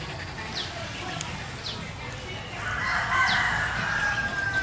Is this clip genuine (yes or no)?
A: yes